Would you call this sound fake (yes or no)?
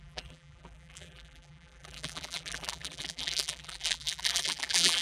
yes